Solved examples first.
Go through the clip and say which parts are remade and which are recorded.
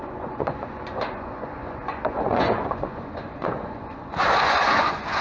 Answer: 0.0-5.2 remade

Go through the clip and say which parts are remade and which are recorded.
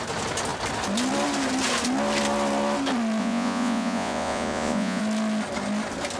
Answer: 0.0-3.2 recorded; 3.2-5.0 remade; 5.0-6.2 recorded